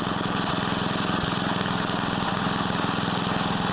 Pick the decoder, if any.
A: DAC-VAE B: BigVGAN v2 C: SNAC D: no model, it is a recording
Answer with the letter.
D